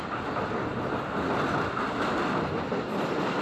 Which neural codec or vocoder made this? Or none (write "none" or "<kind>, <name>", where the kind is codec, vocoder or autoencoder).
none